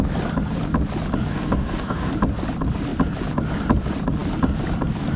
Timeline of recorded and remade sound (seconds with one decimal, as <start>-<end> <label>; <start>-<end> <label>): 0.0-1.3 recorded; 1.3-2.1 remade; 2.1-5.2 recorded